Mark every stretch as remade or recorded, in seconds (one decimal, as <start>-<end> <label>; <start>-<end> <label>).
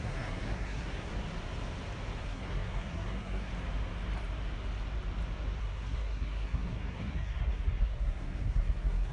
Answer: 0.0-1.1 remade; 1.1-2.2 recorded; 2.2-3.5 remade; 3.5-5.6 recorded; 5.6-9.1 remade